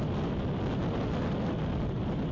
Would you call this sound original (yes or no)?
yes